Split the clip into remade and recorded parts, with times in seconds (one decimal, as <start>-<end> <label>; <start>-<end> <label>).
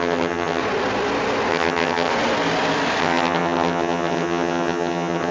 0.0-0.6 remade; 0.6-1.5 recorded; 1.5-2.1 remade; 2.1-3.0 recorded; 3.0-5.3 remade